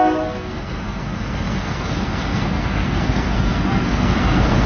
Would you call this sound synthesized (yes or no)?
yes